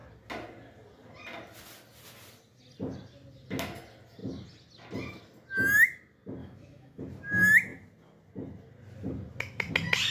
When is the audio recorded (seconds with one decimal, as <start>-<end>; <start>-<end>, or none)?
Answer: 0.0-6.4; 7.0-10.1